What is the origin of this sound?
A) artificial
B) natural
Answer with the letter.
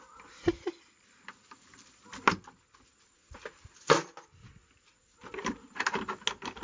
B